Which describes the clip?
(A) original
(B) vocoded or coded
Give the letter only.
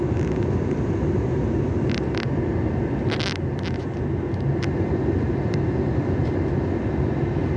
A